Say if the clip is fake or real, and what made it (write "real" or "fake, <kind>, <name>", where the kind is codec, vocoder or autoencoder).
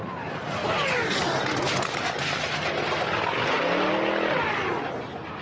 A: real